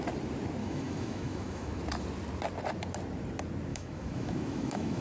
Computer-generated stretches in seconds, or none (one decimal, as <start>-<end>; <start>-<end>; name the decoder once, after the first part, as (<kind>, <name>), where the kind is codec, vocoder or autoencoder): 0.6-1.8 (autoencoder, DAC-VAE); 3.7-5.0